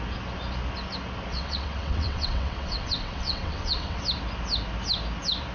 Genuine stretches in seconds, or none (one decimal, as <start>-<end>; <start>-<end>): 0.0-1.3; 4.0-5.5